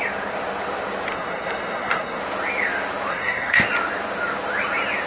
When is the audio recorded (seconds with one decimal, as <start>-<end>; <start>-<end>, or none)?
0.0-1.1; 2.2-3.1; 3.6-5.1